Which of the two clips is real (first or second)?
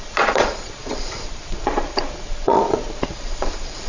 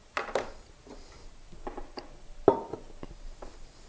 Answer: second